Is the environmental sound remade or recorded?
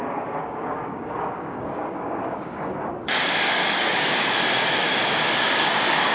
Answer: remade